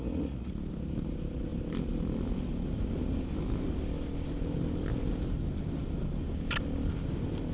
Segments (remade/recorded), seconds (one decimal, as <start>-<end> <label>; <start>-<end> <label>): 0.0-0.5 remade; 0.5-7.5 recorded